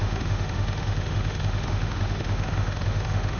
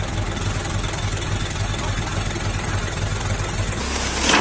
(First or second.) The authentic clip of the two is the second